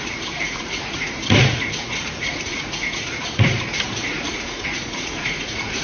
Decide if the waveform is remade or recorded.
remade